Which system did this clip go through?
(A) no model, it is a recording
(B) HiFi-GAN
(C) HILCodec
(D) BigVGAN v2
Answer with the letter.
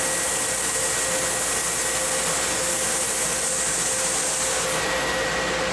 A